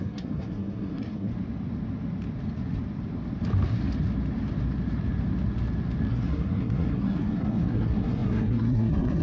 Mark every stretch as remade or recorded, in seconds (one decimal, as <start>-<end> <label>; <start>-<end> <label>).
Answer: 0.0-1.3 remade; 1.3-6.1 recorded; 6.1-9.2 remade